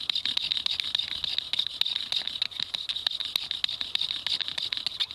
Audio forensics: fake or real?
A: real